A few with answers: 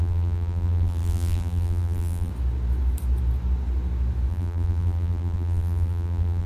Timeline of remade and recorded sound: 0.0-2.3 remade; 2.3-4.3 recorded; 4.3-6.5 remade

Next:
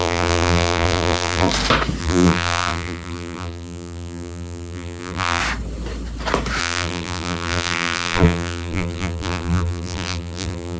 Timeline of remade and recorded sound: 0.0-1.5 remade; 1.5-2.0 recorded; 2.0-5.4 remade; 5.4-6.6 recorded; 6.6-10.8 remade

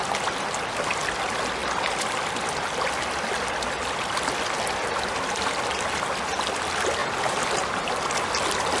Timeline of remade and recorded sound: 0.0-7.0 recorded; 7.0-7.9 remade; 7.9-8.8 recorded

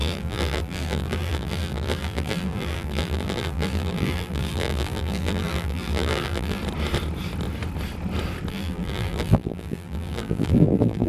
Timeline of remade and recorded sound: 0.0-6.6 remade; 6.6-8.5 recorded; 8.5-11.1 remade

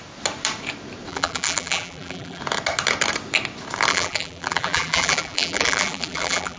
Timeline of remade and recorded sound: 0.0-1.1 recorded; 1.1-2.4 remade; 2.4-3.9 recorded; 3.9-6.6 remade

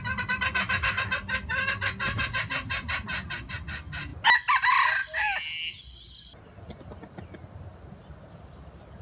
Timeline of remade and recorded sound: 0.0-9.0 recorded